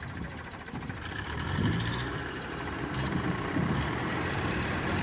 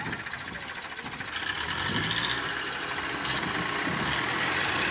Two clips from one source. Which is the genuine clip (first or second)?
second